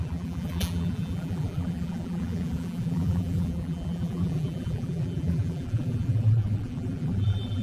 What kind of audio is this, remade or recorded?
remade